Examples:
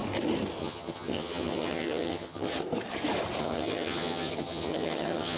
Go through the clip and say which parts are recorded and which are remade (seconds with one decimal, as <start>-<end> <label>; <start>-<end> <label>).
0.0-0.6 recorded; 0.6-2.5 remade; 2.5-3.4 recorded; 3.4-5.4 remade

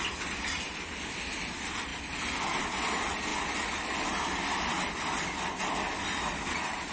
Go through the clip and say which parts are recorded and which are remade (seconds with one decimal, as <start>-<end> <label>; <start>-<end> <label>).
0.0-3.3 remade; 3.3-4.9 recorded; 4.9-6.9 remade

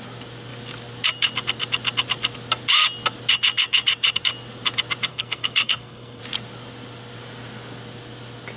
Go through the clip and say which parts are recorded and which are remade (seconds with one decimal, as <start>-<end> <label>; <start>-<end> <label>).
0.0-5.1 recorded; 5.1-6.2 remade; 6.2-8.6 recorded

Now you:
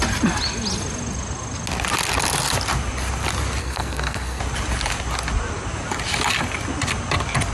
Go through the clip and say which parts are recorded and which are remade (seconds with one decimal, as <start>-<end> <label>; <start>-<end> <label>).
0.0-3.6 recorded; 3.6-4.4 remade; 4.4-7.5 recorded